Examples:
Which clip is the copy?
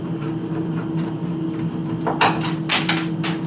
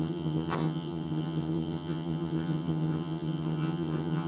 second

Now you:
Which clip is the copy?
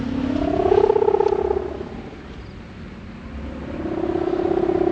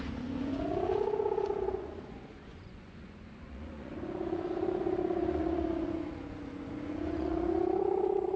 second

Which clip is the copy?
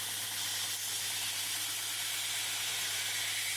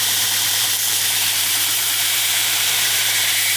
second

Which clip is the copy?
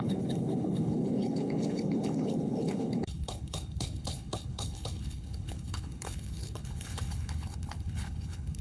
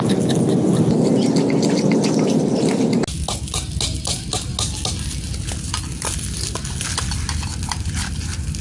first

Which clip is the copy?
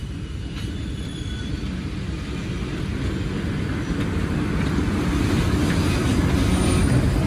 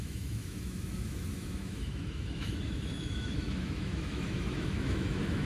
second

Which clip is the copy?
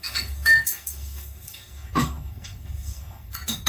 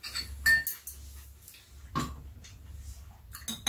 first